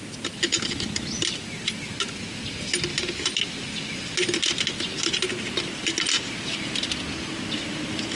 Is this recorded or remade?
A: recorded